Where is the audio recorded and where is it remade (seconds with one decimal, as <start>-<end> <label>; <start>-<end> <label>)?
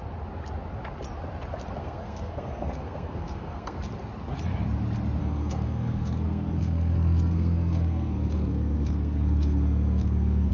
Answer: 0.0-1.8 recorded; 1.8-3.8 remade; 3.8-5.2 recorded; 5.2-10.5 remade